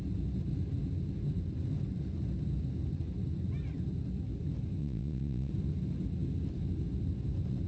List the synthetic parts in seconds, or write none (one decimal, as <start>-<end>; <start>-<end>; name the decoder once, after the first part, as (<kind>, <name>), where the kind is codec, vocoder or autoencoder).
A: 4.8-5.5 (vocoder, Vocos)